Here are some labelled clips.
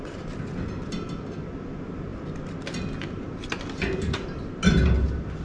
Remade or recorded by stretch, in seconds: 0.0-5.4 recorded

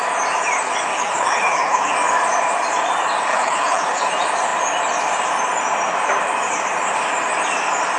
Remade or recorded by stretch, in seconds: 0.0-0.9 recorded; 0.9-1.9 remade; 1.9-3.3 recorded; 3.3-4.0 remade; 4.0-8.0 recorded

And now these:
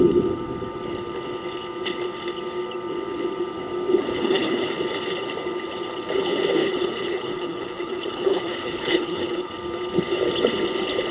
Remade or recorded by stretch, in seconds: 0.0-4.1 recorded; 4.1-4.7 remade; 4.7-6.6 recorded; 6.6-9.5 remade; 9.5-11.1 recorded